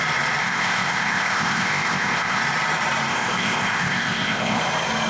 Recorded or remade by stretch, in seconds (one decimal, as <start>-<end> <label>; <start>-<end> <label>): 0.0-0.4 recorded; 0.4-2.4 remade; 2.4-3.1 recorded; 3.1-4.6 remade; 4.6-5.1 recorded